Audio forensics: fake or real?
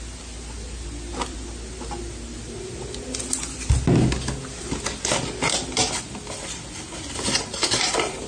real